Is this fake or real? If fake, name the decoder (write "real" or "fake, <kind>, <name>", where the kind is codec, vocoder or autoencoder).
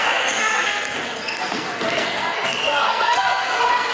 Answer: fake, codec, SNAC